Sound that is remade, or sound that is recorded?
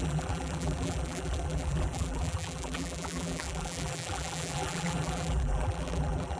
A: remade